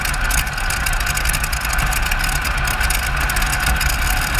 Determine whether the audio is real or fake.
real